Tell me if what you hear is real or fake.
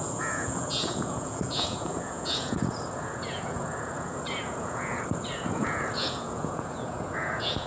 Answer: fake